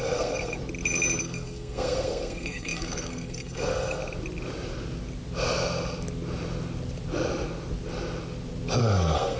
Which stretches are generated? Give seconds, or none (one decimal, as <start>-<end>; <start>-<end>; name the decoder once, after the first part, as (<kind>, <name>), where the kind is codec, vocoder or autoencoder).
0.0-0.6 (codec, SNAC); 1.2-4.0; 8.8-9.4